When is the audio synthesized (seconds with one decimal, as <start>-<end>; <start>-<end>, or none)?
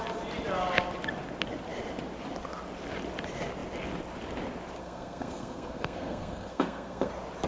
4.8-7.1